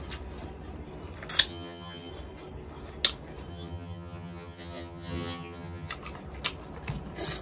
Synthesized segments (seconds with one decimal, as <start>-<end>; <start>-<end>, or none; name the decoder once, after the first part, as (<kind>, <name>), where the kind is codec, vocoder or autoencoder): 1.5-2.1 (vocoder, HiFi-GAN); 3.5-5.9